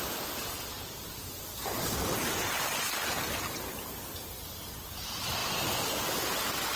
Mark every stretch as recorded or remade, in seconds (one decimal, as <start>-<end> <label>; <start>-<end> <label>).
0.0-6.8 recorded